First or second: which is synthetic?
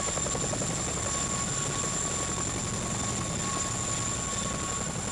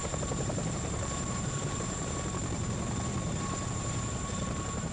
second